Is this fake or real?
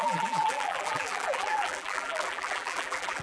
fake